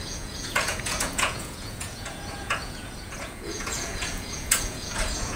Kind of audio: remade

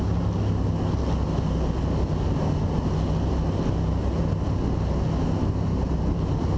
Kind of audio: recorded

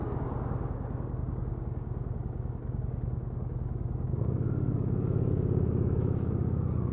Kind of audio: remade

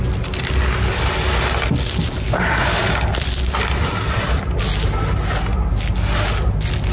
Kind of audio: recorded